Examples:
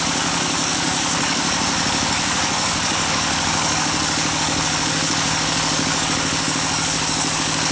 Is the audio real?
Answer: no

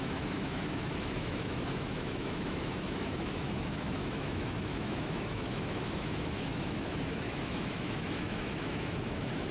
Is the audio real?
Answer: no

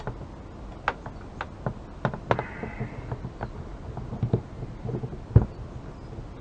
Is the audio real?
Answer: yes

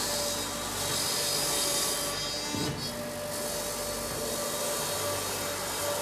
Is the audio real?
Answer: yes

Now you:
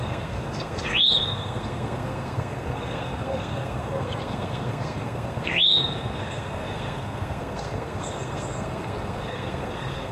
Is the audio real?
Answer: no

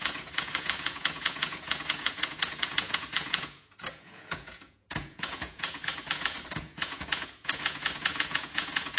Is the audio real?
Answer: no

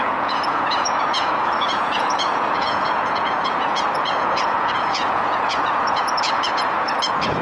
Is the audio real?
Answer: no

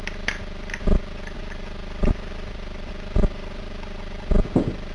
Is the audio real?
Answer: yes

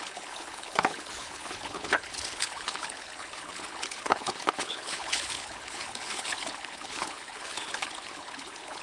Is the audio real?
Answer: no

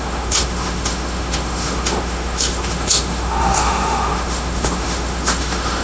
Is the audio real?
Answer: no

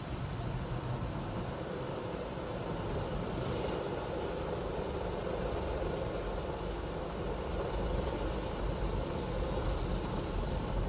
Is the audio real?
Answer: yes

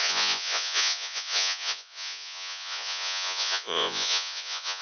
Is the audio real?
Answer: no